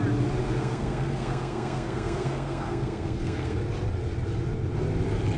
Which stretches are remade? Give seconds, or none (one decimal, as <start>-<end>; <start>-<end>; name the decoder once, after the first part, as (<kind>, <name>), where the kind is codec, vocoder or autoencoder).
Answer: 0.6-3.6 (codec, SNAC)